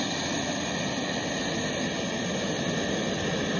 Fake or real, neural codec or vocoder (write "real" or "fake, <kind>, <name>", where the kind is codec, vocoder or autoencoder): real